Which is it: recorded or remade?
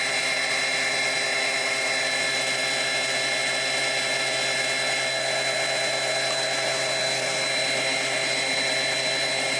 recorded